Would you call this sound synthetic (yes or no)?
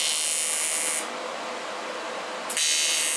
no